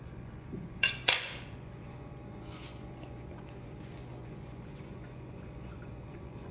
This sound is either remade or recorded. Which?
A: remade